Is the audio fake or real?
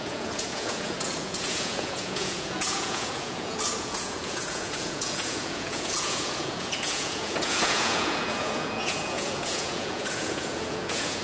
fake